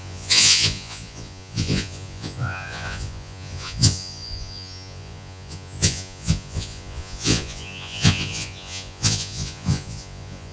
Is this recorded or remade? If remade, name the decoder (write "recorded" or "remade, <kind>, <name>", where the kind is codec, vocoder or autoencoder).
remade, vocoder, Vocos